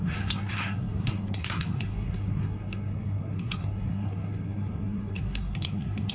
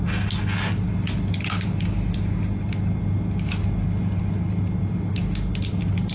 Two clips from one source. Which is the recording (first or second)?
second